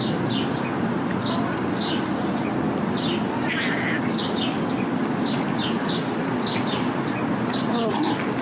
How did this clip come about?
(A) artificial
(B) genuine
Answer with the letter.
B